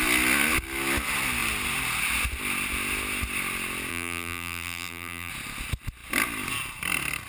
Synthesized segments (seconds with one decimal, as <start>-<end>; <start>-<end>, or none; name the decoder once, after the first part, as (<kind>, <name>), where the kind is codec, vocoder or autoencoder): 3.9-5.3 (vocoder, BigVGAN v2)